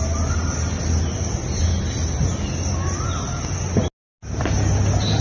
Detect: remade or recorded recorded